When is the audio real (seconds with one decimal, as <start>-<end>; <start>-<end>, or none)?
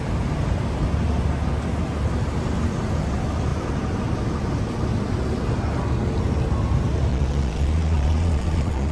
0.0-7.1